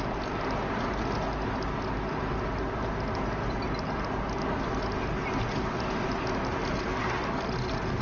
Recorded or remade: recorded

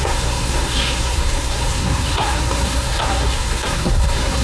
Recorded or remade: remade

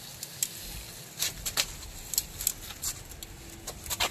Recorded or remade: recorded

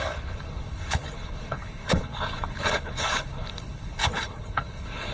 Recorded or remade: remade